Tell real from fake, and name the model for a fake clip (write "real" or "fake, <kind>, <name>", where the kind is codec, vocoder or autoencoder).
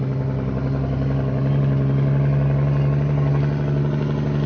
real